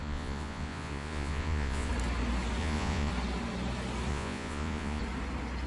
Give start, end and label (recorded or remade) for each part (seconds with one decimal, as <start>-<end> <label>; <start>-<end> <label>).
0.0-1.9 remade; 1.9-2.6 recorded; 2.6-3.1 remade; 3.1-4.1 recorded; 4.1-5.0 remade; 5.0-5.7 recorded